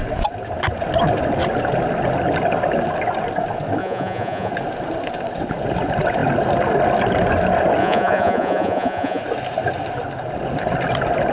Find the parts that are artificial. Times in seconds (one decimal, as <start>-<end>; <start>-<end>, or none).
3.8-4.5; 7.8-9.2